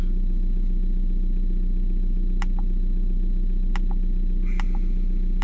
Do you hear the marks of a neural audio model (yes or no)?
no